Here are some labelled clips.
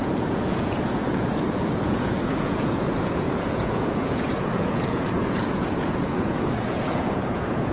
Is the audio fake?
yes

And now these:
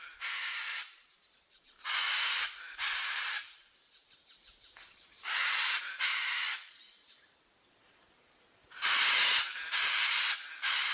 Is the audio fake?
yes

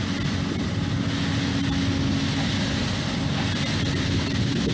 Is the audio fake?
no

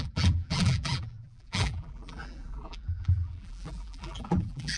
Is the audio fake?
yes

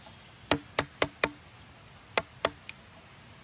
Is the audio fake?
no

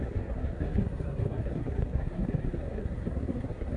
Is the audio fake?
yes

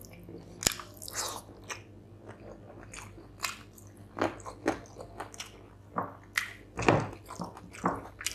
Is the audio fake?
no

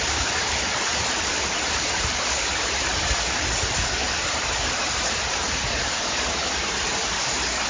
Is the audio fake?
no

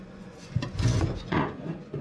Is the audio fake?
yes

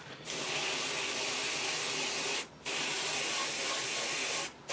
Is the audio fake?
no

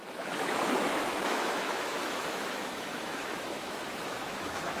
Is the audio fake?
yes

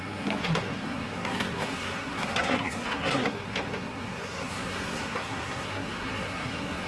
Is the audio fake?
yes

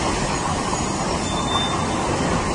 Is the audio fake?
no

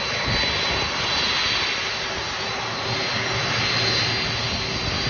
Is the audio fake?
no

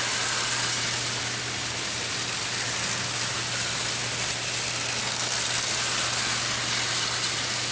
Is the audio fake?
no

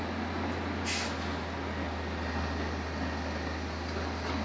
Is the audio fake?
no